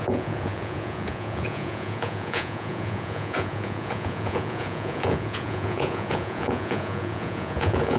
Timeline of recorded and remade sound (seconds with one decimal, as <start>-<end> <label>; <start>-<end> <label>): 0.0-8.0 remade